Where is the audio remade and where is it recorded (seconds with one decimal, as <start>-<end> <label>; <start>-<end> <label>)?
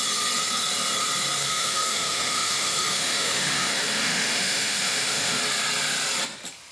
0.0-1.5 recorded; 1.5-5.4 remade; 5.4-6.7 recorded